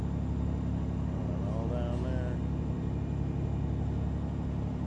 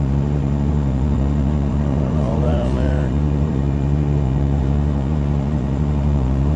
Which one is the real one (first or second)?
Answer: first